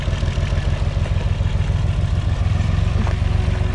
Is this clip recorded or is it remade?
recorded